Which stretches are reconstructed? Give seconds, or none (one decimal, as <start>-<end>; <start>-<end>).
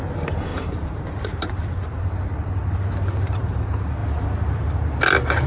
0.5-2.1